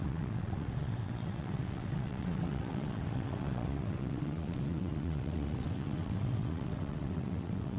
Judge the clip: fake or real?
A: fake